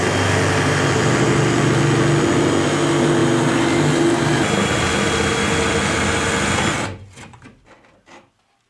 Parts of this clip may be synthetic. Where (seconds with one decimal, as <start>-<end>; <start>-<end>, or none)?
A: none